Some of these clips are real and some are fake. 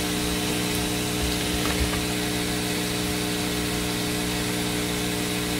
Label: real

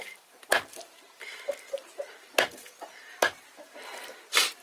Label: fake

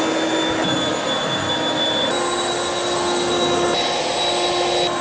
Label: real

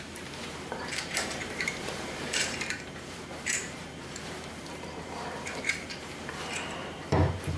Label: fake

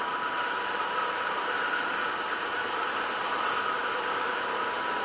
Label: fake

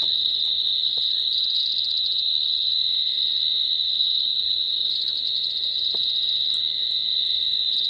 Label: real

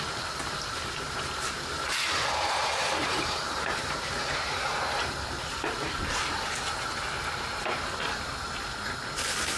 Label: fake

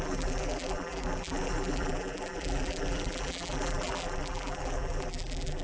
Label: fake